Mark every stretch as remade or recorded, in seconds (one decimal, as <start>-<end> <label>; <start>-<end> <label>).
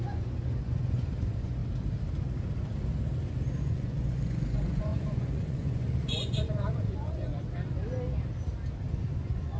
0.0-1.6 remade; 1.6-3.6 recorded; 3.6-7.3 remade; 7.3-8.9 recorded; 8.9-9.6 remade